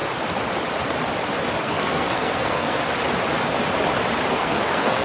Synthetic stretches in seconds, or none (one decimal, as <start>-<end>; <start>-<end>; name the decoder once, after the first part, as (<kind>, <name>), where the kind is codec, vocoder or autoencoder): 1.6-2.8 (codec, SNAC); 4.3-5.0